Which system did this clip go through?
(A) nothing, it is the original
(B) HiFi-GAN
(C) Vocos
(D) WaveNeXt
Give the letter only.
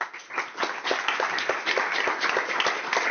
A